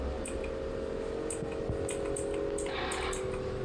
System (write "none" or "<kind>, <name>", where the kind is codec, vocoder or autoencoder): none